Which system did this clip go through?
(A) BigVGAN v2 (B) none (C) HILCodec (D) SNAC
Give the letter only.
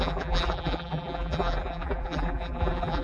A